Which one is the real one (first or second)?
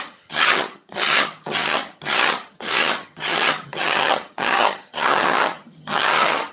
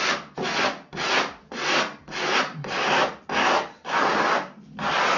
second